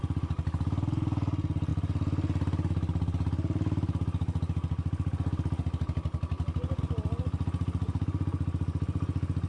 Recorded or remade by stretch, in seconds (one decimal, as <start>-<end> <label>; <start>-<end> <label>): 0.0-9.5 recorded